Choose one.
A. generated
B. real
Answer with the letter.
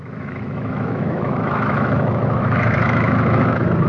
A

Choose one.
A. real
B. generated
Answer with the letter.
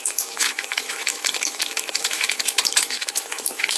B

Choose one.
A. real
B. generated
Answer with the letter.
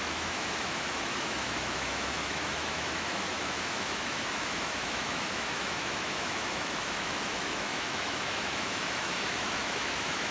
B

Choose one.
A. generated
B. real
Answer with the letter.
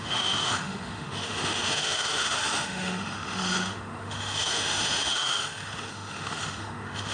A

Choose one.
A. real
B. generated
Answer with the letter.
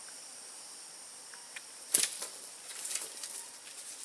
A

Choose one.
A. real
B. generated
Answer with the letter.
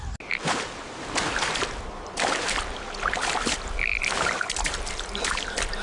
A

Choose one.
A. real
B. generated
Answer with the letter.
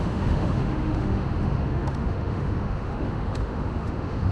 B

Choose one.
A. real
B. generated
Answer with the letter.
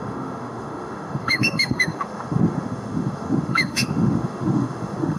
B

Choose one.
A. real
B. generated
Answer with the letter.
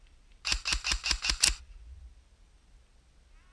A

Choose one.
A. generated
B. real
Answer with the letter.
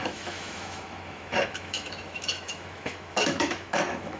A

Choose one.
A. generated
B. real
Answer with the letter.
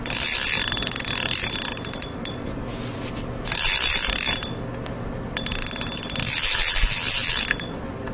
B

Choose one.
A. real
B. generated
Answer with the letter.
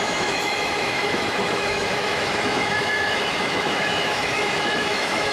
B